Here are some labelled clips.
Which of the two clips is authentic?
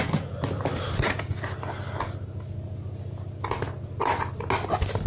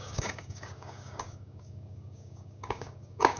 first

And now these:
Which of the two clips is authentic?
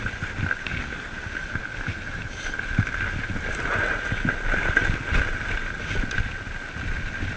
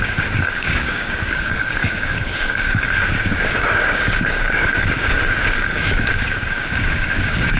first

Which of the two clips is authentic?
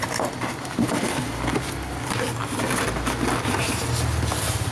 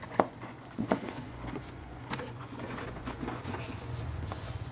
first